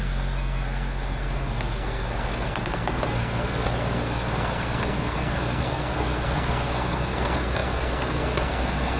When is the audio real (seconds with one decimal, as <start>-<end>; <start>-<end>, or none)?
none